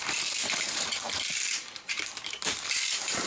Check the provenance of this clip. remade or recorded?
remade